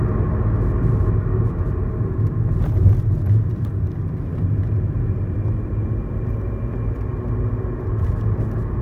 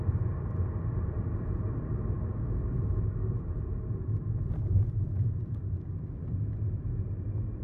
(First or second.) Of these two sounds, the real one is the first